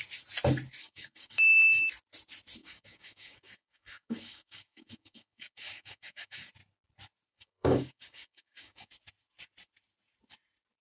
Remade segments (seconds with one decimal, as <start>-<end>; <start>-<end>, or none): 0.8-1.8; 2.6-6.5; 7.3-8.9